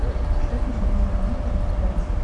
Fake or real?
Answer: fake